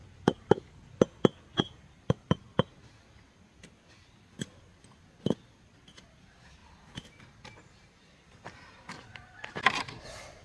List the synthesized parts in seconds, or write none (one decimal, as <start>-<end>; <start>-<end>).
0.0-0.8; 1.5-2.7; 6.6-9.8